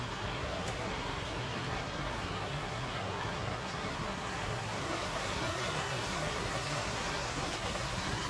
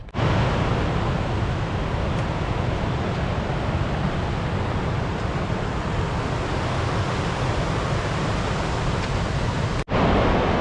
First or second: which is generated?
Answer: first